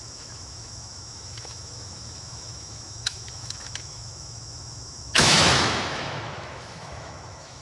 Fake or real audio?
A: fake